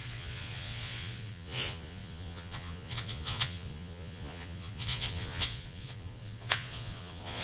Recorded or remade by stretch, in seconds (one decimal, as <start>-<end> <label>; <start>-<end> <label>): 0.0-7.4 remade